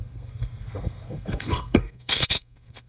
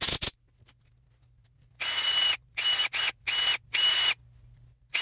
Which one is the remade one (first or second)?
first